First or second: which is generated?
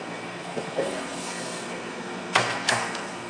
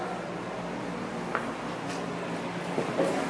first